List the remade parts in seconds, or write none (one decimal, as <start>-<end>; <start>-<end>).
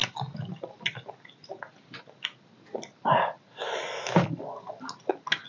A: none